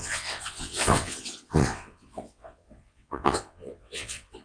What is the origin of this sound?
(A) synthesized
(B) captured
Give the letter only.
A